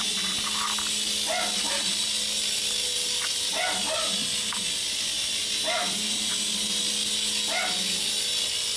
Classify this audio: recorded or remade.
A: recorded